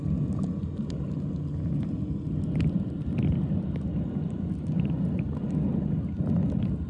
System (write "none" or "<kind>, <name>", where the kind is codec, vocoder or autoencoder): none